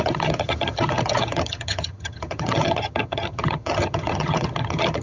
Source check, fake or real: fake